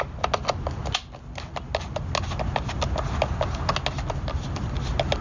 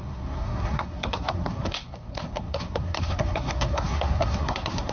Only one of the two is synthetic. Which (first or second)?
second